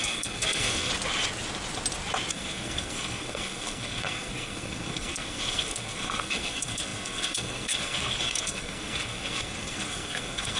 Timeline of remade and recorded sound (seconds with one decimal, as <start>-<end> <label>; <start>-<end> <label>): 0.0-0.9 remade; 0.9-2.3 recorded; 2.3-10.6 remade

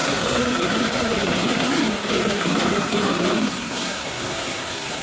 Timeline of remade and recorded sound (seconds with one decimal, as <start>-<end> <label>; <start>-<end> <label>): 0.0-5.0 remade

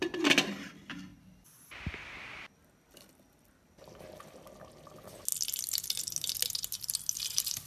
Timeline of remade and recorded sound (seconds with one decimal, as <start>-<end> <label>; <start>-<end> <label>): 0.0-7.7 recorded